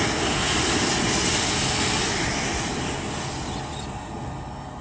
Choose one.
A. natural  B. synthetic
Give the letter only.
A